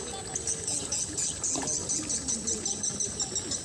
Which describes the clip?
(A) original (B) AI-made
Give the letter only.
A